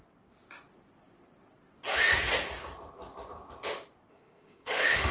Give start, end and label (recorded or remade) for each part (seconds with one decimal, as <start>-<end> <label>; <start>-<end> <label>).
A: 0.0-4.1 recorded; 4.1-5.1 remade